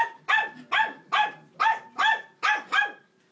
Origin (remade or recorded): recorded